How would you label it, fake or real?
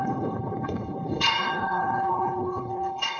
fake